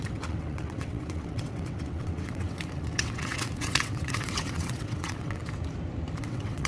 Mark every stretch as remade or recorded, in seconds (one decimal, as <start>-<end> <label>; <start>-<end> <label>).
0.0-5.4 remade; 5.4-6.2 recorded; 6.2-6.7 remade